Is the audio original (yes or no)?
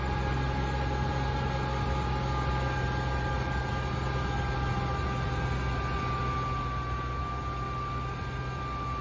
yes